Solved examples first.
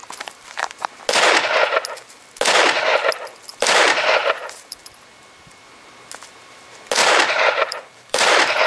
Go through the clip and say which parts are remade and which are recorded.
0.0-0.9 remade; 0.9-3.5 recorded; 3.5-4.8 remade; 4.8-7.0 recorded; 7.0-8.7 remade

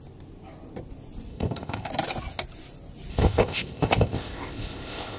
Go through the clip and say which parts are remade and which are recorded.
0.0-1.3 recorded; 1.3-1.9 remade; 1.9-3.1 recorded; 3.1-5.2 remade

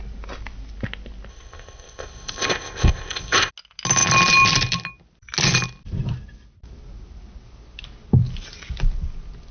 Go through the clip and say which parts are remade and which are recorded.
0.0-1.3 recorded; 1.3-3.5 remade; 3.5-9.5 recorded

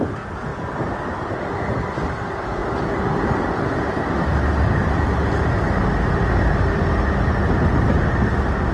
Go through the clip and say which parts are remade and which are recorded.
0.0-8.7 recorded